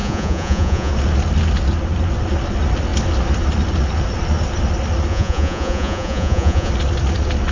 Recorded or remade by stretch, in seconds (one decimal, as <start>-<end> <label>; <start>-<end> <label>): 0.0-0.9 remade; 0.9-5.1 recorded; 5.1-6.7 remade; 6.7-7.5 recorded